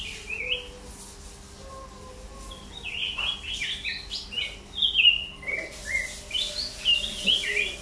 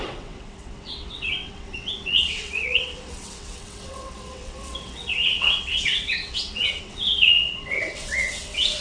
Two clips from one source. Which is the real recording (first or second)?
first